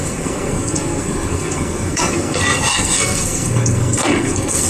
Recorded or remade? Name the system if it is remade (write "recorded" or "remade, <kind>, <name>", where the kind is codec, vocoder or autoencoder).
remade, codec, SNAC